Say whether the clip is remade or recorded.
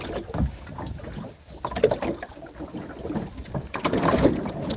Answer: recorded